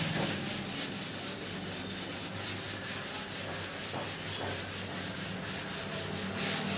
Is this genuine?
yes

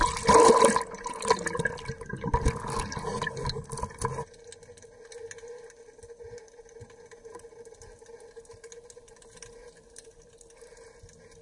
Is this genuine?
yes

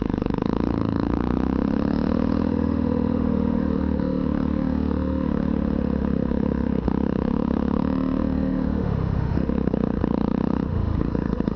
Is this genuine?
no